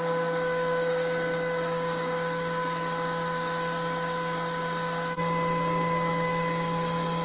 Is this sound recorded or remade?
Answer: remade